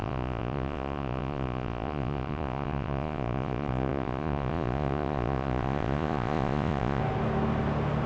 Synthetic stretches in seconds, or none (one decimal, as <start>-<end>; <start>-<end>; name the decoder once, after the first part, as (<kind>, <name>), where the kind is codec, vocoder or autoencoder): 0.0-7.0 (vocoder, Vocos)